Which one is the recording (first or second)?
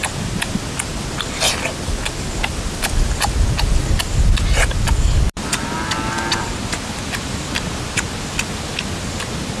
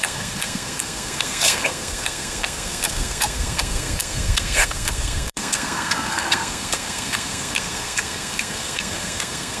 first